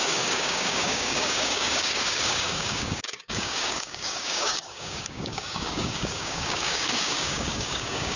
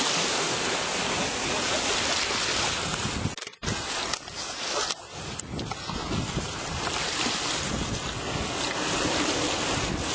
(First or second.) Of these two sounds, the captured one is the second